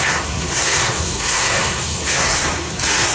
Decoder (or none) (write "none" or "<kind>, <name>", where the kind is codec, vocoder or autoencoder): codec, SNAC